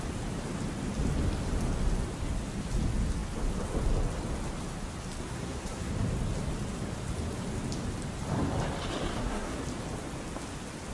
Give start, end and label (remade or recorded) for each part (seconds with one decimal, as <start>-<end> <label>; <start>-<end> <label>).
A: 0.0-5.2 recorded; 5.2-5.9 remade; 5.9-9.1 recorded; 9.1-9.6 remade; 9.6-10.9 recorded